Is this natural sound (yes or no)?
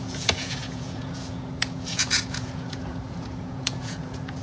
no